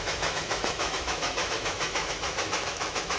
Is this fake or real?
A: fake